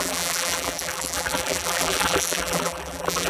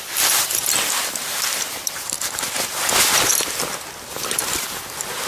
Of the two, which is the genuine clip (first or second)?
second